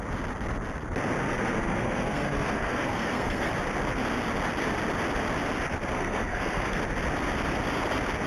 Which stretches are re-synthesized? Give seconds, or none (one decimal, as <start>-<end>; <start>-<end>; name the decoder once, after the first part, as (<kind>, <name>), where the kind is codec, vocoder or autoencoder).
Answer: 1.2-3.5 (codec, SNAC); 5.9-6.8